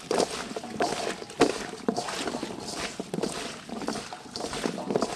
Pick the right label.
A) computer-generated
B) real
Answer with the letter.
B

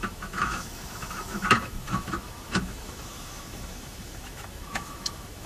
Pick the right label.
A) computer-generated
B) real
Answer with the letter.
A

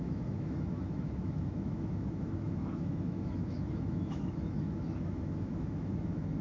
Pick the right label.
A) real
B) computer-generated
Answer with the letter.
B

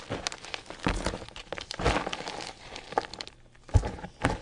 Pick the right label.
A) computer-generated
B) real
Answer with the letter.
B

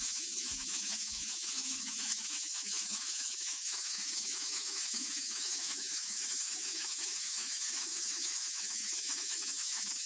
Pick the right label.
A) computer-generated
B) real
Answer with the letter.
A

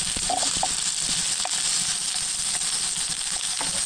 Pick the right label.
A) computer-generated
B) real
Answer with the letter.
B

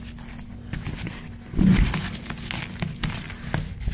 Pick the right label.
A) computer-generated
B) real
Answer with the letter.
B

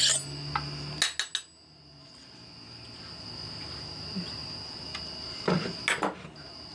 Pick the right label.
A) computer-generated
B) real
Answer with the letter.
B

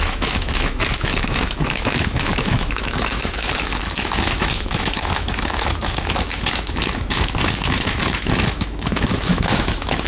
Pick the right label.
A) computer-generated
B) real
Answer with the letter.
A